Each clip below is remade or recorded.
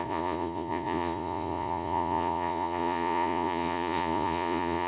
remade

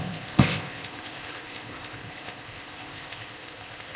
remade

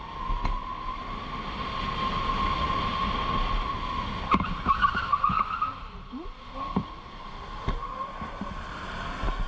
recorded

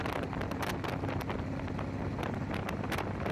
recorded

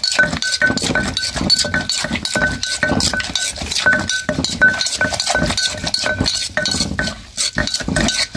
recorded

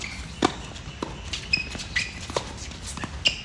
recorded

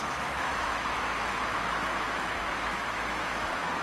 remade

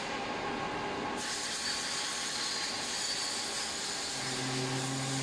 recorded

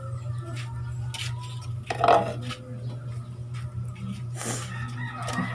recorded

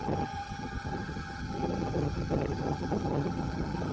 remade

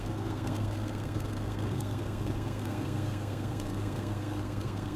remade